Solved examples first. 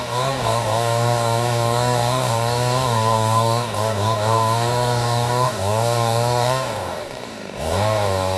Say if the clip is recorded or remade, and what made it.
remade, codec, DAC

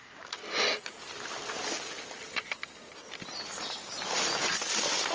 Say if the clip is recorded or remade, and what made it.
recorded